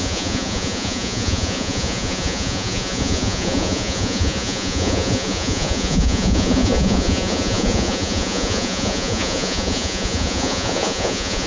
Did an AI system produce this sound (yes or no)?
yes